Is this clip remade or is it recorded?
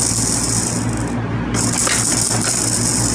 recorded